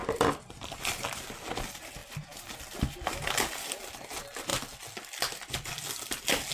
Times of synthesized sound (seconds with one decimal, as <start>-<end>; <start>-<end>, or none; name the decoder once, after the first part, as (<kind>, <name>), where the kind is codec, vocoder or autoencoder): none